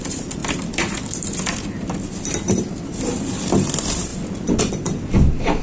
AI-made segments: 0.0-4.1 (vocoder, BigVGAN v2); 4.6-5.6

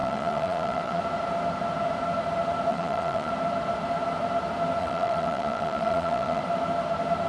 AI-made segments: 0.0-1.0 (vocoder, Vocos); 2.7-3.3; 4.8-6.4